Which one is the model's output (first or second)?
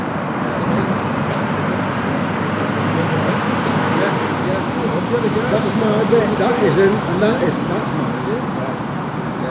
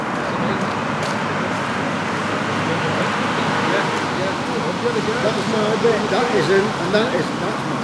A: first